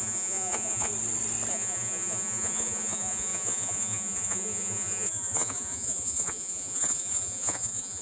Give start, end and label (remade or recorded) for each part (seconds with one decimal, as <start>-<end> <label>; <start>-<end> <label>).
0.0-0.9 remade; 0.9-1.5 recorded; 1.5-8.0 remade